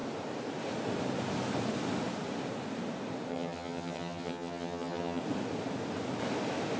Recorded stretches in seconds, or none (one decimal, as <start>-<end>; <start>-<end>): 0.0-3.3; 5.2-6.8